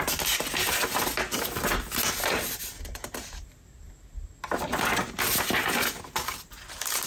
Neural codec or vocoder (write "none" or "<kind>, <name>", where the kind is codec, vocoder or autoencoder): none